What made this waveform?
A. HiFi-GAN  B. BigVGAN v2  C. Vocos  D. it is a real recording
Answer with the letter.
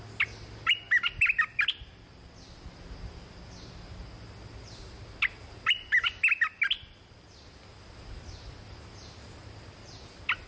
D